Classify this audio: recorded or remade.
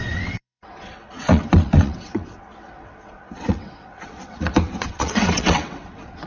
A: remade